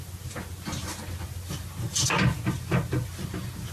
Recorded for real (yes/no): yes